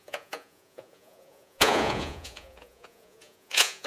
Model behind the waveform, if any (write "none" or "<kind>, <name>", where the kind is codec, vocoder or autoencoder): vocoder, Vocos